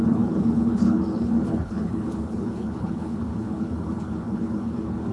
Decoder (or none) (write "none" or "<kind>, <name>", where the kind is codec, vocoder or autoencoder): codec, HILCodec